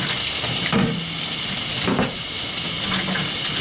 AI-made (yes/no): no